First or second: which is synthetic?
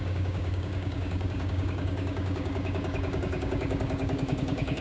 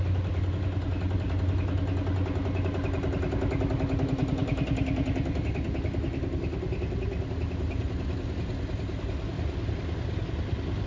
first